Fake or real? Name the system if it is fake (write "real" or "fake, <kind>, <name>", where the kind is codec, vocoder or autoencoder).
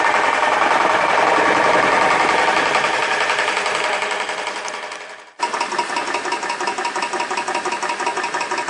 real